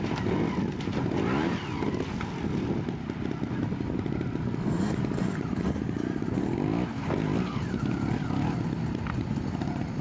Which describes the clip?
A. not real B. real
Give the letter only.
B